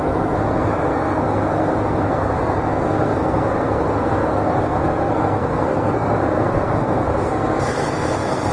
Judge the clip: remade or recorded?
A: remade